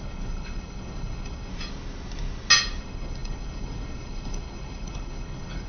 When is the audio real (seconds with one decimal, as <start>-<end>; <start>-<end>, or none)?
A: 1.5-2.8